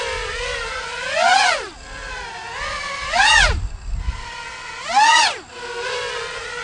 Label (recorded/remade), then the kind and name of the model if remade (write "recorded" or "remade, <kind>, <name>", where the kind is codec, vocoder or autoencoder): recorded